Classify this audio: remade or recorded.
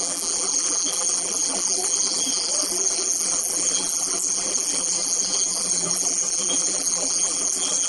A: remade